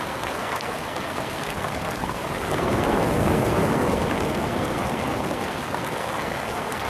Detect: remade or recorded remade